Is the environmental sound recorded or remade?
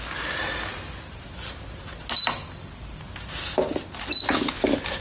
recorded